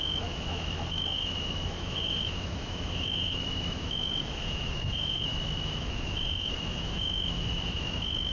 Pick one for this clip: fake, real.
fake